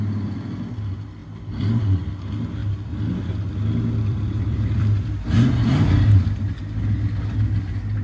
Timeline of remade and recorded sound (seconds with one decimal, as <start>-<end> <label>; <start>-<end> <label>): 0.0-1.2 recorded; 1.2-1.8 remade; 1.8-2.6 recorded; 2.6-3.5 remade; 3.5-4.1 recorded; 4.1-5.1 remade; 5.1-8.0 recorded